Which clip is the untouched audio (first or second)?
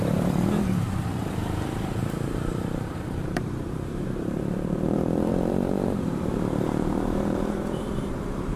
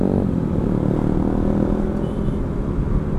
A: second